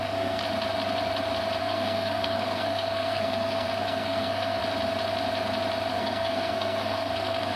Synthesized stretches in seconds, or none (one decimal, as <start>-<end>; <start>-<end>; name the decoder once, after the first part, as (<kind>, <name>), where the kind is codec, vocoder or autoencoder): 0.0-0.4 (codec, SNAC); 1.6-4.6; 5.9-7.6